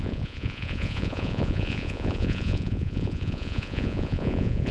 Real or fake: fake